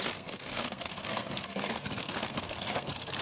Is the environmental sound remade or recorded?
remade